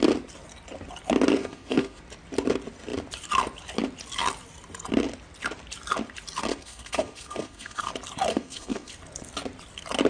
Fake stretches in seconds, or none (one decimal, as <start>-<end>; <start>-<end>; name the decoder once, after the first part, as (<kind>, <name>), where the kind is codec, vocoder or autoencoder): 1.4-2.0 (codec, SNAC); 6.5-7.9; 8.3-8.9